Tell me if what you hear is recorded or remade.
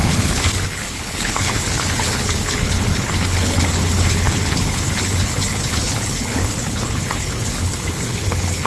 remade